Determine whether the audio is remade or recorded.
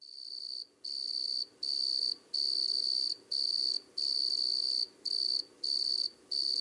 recorded